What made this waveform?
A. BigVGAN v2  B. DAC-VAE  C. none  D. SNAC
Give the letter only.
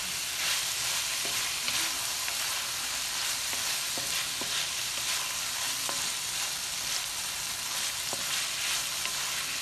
C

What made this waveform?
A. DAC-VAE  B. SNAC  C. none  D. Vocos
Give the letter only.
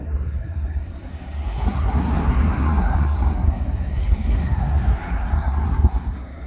B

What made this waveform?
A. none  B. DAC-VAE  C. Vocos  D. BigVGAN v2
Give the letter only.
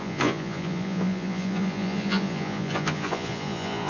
C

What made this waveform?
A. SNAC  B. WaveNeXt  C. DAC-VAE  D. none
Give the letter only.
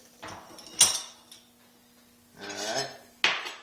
D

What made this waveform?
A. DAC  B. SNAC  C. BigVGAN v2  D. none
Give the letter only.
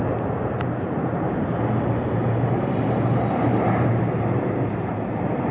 C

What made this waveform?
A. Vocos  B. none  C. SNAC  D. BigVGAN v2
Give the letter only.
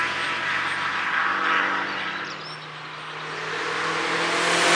B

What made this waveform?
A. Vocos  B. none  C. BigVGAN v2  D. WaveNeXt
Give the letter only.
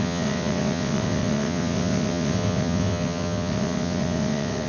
D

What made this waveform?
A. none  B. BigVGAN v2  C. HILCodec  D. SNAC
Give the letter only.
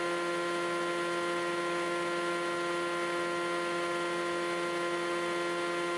A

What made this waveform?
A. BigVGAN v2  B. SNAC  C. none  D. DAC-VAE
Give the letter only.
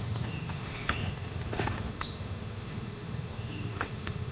D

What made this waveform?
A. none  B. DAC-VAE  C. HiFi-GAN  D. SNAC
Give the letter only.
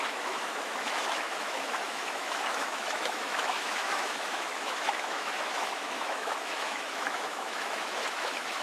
B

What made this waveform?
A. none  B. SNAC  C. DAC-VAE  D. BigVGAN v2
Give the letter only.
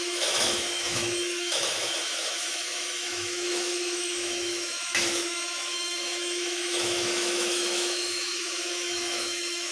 C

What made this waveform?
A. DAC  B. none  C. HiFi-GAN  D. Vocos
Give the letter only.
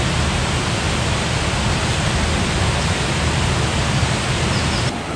B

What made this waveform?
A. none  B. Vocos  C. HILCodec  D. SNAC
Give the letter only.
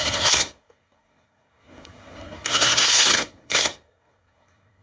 D